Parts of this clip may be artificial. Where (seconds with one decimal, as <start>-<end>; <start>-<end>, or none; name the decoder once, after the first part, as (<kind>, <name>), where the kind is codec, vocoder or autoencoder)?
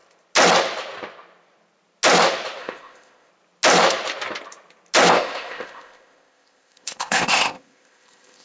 2.6-3.3 (codec, ZipCodec); 5.1-8.4